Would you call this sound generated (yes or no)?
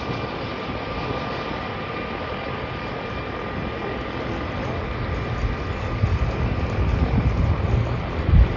no